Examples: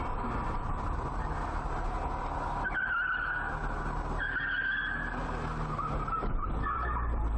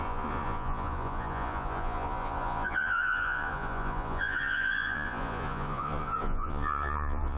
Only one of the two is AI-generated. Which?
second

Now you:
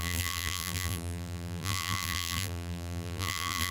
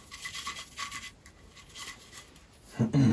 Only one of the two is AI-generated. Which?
first